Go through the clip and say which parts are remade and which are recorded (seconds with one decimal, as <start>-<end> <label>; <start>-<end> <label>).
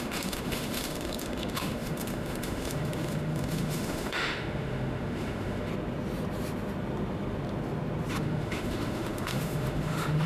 0.0-5.7 remade; 5.7-8.1 recorded; 8.1-10.3 remade